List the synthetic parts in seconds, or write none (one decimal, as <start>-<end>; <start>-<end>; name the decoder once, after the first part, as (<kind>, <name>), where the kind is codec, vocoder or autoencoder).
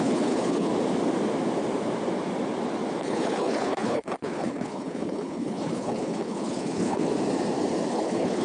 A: 0.0-0.7 (codec, HILCodec); 3.0-7.1; 7.9-8.4